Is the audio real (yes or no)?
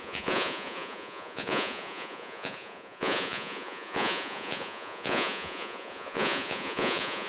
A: no